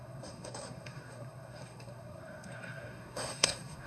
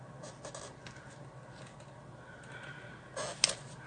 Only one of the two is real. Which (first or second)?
second